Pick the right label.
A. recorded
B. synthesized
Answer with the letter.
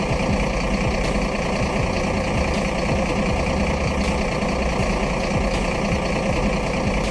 A